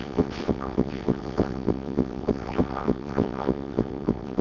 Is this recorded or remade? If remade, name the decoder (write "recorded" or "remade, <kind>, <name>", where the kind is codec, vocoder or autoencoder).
remade, vocoder, WaveNeXt